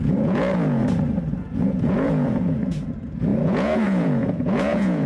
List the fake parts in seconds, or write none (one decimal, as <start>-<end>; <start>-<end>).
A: 0.0-0.8; 1.4-5.1

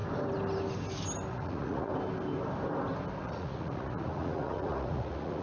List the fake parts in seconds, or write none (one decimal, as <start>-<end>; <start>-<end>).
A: 1.3-1.9; 3.2-5.4

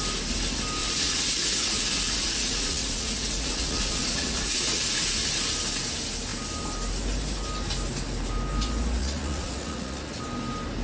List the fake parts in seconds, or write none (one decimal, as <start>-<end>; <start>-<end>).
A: 0.8-5.3; 9.0-10.2